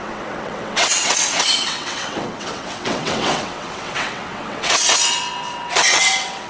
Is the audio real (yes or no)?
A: no